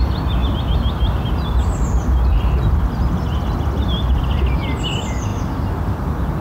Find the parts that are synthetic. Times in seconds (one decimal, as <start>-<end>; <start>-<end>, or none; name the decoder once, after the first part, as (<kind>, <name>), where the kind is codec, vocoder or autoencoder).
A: none